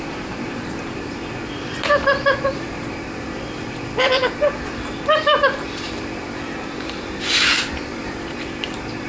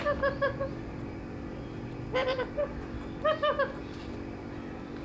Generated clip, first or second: first